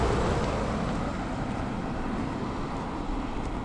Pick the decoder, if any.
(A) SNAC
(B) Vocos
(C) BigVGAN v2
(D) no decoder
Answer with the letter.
D